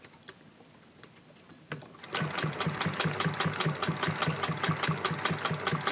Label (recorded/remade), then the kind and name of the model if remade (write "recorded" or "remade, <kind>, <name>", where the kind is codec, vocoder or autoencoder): recorded